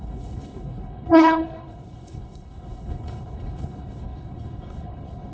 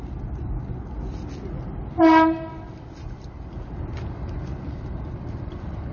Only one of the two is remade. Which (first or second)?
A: first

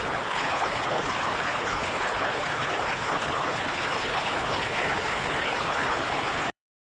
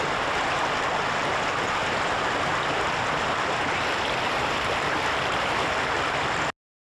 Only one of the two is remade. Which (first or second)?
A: first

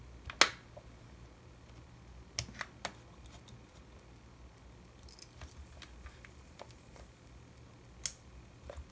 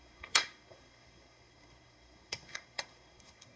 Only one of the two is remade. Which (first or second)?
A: second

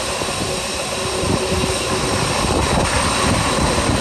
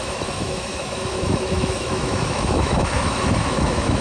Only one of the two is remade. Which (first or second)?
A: second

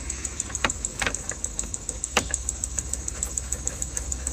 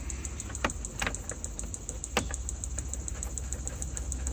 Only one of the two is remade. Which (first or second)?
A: first